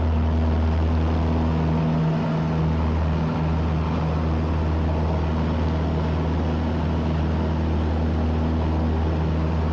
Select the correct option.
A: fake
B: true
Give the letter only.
B